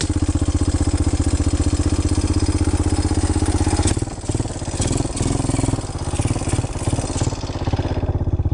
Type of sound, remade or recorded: recorded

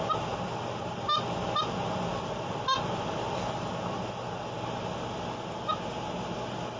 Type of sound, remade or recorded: recorded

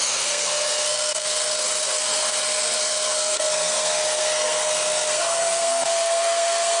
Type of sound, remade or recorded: remade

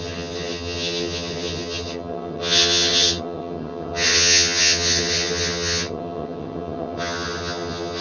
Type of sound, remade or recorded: remade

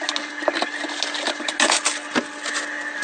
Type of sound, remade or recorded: recorded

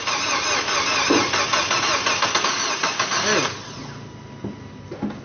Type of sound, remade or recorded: recorded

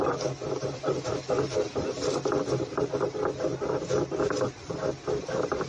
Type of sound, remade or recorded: recorded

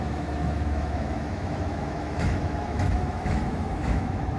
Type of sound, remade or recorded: remade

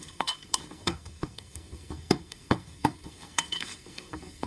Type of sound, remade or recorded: remade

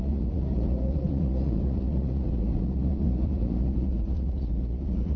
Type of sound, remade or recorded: remade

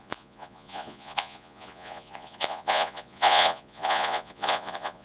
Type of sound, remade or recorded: remade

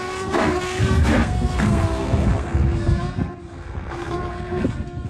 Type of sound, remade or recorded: remade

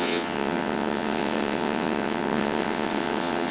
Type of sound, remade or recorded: remade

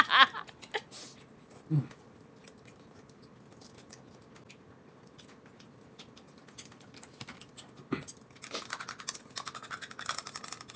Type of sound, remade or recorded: recorded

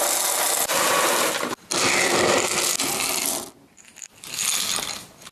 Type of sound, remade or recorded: recorded